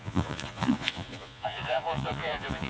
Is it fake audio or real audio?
fake